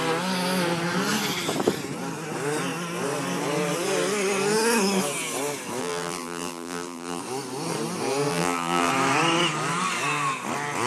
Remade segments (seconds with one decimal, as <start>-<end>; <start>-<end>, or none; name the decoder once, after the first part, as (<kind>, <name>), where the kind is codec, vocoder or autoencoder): 5.8-7.2 (vocoder, BigVGAN v2); 8.3-8.9